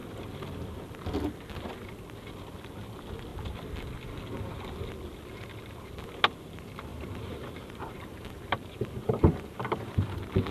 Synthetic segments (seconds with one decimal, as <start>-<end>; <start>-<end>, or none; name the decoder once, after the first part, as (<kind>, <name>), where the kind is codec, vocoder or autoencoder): 6.9-10.1 (vocoder, BigVGAN v2)